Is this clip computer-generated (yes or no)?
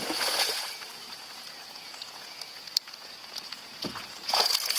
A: yes